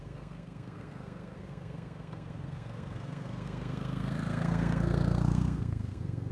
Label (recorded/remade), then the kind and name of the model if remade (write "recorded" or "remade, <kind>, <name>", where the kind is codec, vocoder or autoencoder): remade, codec, SNAC